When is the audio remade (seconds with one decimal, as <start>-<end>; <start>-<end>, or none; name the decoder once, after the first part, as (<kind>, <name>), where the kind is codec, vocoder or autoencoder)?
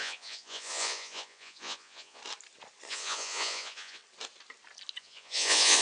0.0-2.2 (vocoder, Vocos); 2.9-4.0; 5.0-5.8